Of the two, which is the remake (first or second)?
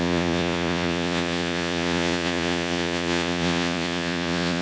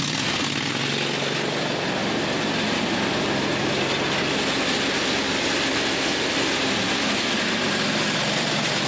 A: first